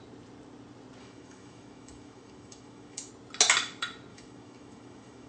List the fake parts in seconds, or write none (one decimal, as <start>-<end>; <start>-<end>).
1.0-3.1; 4.1-5.3